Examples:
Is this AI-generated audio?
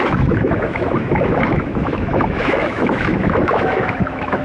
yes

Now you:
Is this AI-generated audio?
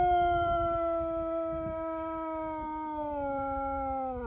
yes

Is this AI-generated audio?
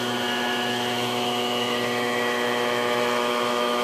yes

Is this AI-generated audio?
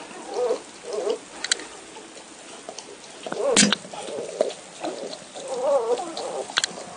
no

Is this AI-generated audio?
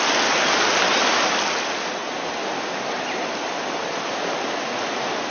no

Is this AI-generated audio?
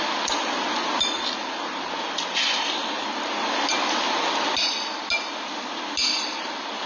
no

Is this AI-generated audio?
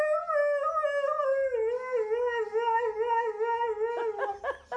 no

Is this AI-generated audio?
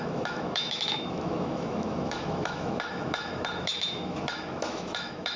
yes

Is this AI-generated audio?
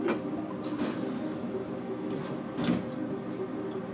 no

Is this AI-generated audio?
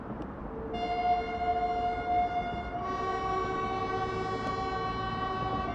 no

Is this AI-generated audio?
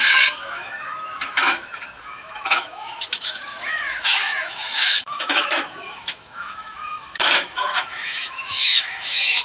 yes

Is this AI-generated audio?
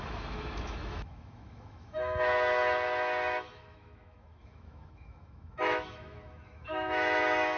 yes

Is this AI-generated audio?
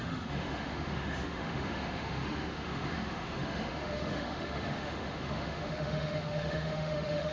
yes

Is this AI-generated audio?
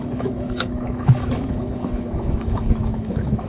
yes